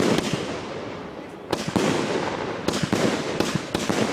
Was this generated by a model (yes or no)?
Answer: no